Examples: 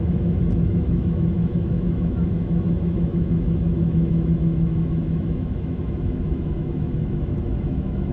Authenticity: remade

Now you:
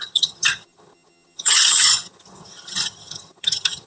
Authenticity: remade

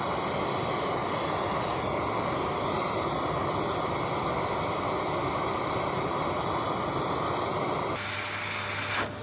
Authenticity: recorded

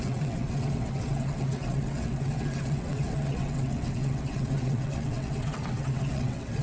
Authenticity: remade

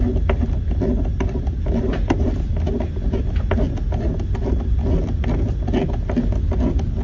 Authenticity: recorded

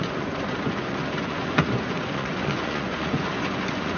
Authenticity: remade